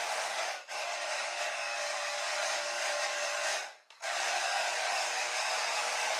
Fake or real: fake